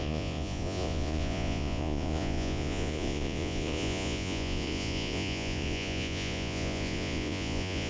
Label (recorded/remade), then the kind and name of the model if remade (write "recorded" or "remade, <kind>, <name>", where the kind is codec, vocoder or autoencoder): remade, vocoder, Vocos